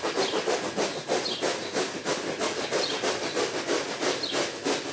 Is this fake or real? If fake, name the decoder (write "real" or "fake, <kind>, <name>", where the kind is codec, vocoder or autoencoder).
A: real